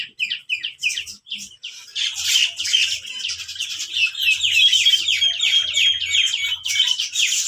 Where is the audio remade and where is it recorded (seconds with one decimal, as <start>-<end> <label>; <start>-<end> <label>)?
0.0-7.5 recorded